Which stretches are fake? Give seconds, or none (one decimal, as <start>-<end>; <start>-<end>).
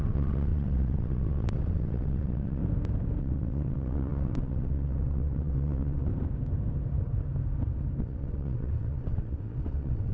0.0-2.6; 3.2-6.1; 8.0-10.1